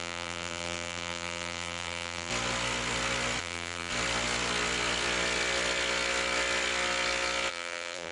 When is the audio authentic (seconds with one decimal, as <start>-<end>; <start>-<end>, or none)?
2.3-3.4; 3.9-7.5